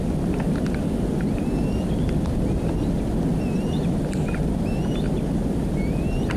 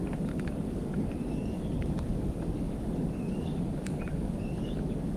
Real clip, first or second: first